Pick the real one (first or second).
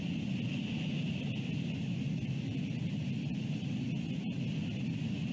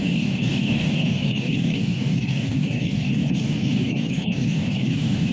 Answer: first